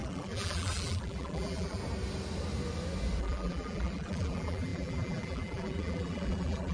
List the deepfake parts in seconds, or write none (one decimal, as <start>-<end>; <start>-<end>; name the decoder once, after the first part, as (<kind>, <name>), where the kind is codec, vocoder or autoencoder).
0.0-1.8 (vocoder, BigVGAN v2); 3.2-6.7